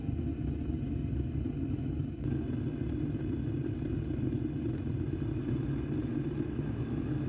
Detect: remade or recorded recorded